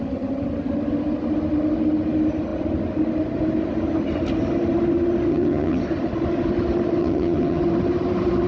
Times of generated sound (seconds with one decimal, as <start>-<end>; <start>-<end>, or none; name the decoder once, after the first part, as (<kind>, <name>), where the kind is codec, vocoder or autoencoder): 5.3-5.8 (vocoder, HiFi-GAN); 7.0-7.6